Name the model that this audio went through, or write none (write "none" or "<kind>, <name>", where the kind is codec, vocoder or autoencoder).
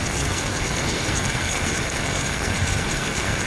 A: codec, SNAC